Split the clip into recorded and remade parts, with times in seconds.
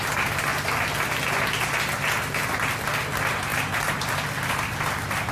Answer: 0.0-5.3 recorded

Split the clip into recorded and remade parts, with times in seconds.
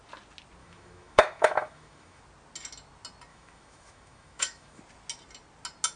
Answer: 0.0-0.6 recorded; 0.6-2.2 remade; 2.2-3.3 recorded; 3.3-4.8 remade; 4.8-6.0 recorded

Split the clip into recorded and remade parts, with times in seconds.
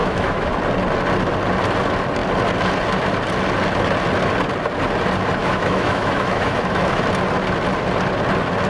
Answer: 0.0-0.5 remade; 0.5-5.4 recorded; 5.4-7.0 remade; 7.0-8.7 recorded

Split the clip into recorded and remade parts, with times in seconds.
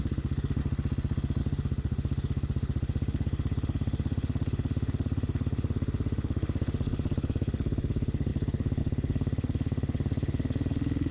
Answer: 0.0-0.6 remade; 0.6-1.4 recorded; 1.4-11.1 remade